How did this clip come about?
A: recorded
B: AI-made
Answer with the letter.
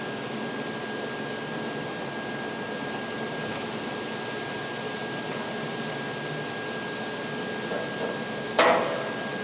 A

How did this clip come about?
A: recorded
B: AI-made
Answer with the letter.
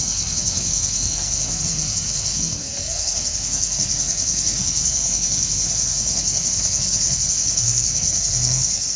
B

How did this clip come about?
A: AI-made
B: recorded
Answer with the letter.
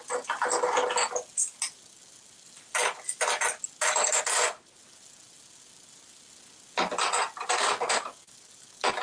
B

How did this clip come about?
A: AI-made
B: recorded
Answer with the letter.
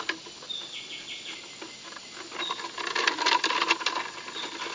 B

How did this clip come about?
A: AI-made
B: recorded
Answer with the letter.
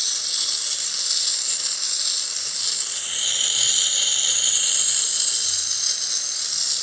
B